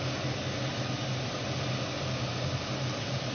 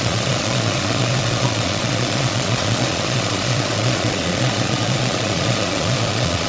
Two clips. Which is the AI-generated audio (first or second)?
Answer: second